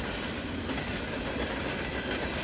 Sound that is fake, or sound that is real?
real